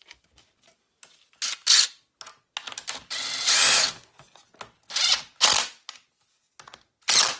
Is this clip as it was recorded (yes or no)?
yes